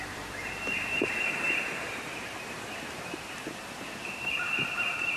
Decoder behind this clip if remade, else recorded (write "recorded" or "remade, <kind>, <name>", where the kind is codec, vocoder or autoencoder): remade, vocoder, BigVGAN v2